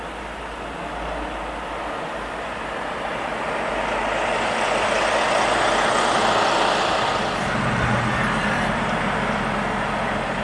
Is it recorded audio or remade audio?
recorded